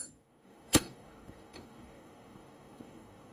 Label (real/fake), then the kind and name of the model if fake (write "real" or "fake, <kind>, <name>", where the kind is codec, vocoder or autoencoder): fake, codec, DAC